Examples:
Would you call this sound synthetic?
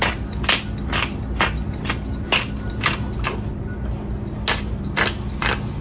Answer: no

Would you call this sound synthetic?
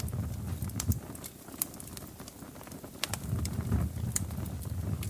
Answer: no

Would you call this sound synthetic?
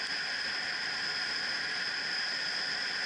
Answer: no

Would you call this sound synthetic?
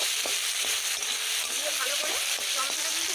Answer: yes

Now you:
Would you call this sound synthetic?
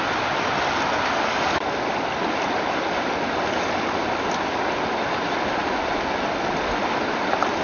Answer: no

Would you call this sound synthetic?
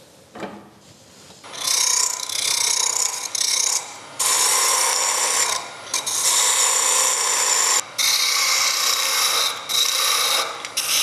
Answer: no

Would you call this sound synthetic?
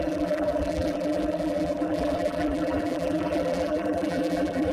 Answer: yes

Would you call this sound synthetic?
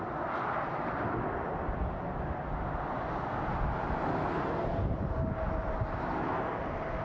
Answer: no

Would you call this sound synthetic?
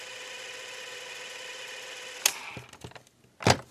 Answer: no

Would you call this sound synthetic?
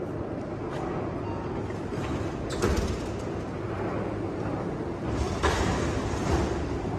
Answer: no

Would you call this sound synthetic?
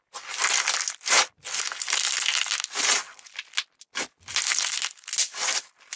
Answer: no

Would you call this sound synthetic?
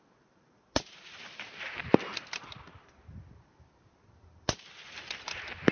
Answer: yes